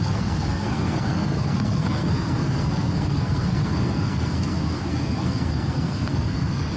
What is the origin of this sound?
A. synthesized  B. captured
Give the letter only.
A